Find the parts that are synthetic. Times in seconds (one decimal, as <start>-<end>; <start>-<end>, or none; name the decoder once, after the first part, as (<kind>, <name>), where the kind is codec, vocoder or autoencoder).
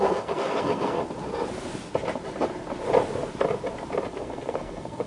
0.0-1.0 (codec, SNAC); 4.1-5.1